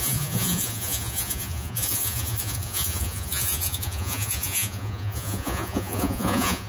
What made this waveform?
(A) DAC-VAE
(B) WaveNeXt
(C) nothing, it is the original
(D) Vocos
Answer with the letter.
D